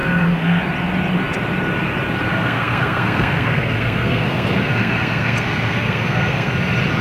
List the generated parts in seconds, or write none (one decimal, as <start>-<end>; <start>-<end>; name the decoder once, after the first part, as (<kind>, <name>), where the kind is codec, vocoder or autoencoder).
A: 0.0-0.6 (codec, SNAC); 2.3-6.5

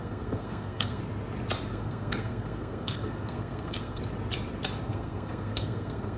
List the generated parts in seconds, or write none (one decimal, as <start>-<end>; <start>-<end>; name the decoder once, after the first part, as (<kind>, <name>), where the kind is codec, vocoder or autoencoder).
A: 0.0-1.0 (codec, SNAC); 1.7-4.0; 4.8-6.2